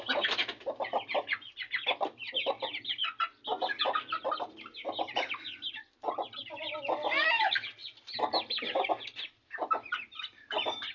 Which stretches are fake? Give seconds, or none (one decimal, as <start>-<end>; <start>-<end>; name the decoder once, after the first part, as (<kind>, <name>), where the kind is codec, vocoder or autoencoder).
none